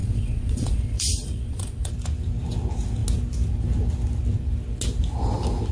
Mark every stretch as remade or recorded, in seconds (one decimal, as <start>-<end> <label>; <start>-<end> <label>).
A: 0.0-1.9 remade; 1.9-5.7 recorded

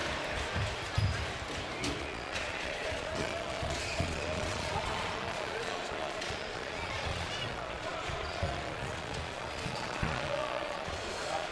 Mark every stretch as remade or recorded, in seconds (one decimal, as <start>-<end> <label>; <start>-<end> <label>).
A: 0.0-2.0 recorded; 2.0-11.5 remade

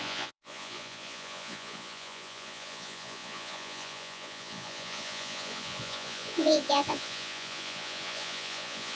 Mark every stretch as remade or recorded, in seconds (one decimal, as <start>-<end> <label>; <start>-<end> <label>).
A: 0.0-8.9 remade

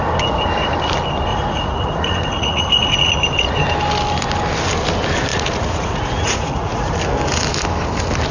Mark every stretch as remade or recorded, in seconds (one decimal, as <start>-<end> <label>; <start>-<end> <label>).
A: 0.0-1.3 recorded; 1.3-3.1 remade; 3.1-5.3 recorded; 5.3-6.9 remade; 6.9-8.3 recorded

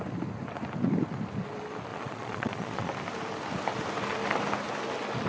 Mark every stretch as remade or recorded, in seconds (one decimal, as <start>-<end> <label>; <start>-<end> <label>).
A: 0.0-1.9 recorded; 1.9-2.9 remade; 2.9-5.3 recorded

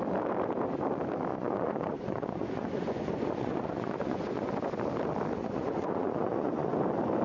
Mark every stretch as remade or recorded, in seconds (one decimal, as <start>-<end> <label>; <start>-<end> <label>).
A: 0.0-1.3 recorded; 1.3-4.5 remade; 4.5-5.4 recorded; 5.4-6.7 remade; 6.7-7.2 recorded

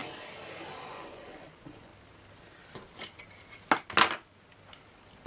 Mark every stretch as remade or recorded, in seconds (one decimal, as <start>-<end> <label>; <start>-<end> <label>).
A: 0.0-0.9 recorded; 0.9-1.9 remade; 1.9-5.3 recorded